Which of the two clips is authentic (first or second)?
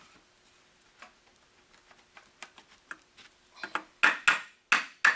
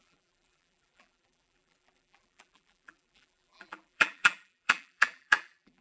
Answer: first